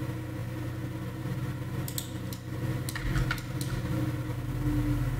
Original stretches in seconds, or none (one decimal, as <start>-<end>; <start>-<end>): 0.0-5.2